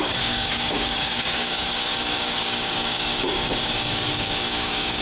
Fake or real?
fake